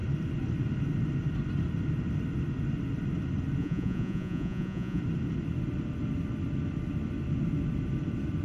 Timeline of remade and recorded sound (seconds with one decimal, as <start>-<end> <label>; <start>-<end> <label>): 0.0-3.6 recorded; 3.6-5.0 remade; 5.0-8.4 recorded